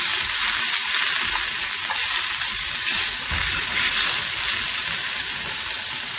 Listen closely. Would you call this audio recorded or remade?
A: recorded